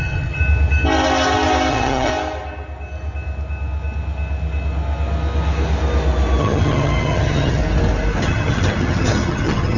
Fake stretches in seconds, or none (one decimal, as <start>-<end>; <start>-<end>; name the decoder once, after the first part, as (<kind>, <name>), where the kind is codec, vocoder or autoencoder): 0.0-0.4 (vocoder, HiFi-GAN); 1.7-2.1; 6.4-7.6; 8.2-9.8